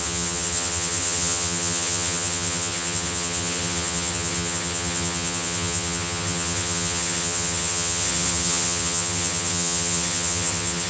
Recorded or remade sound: remade